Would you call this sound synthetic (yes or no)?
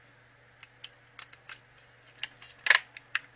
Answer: no